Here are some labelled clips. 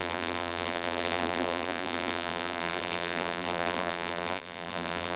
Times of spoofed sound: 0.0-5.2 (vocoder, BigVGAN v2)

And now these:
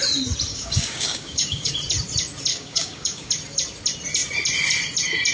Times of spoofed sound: 0.5-1.7 (codec, DAC); 2.5-3.3

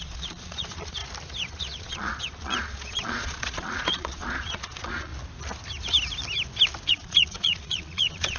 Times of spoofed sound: 0.0-1.0 (vocoder, Vocos); 1.5-5.1; 6.9-8.4

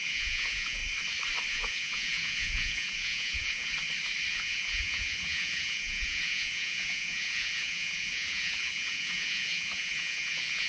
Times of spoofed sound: 0.0-0.8 (vocoder, Vocos); 1.5-3.7; 4.3-10.7

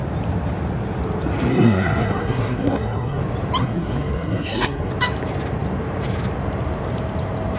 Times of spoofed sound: 1.5-3.2 (codec, SNAC); 3.6-4.9

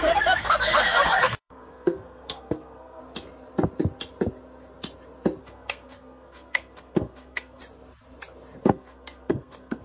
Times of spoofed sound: 0.0-3.0 (codec, SNAC); 5.4-7.6; 8.6-9.8

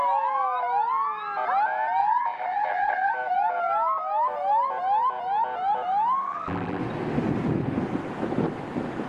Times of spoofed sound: 2.0-3.1 (vocoder, BigVGAN v2); 6.2-6.8